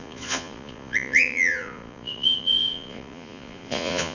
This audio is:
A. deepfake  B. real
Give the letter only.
A